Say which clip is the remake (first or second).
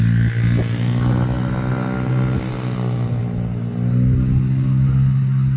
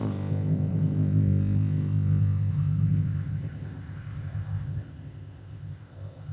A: second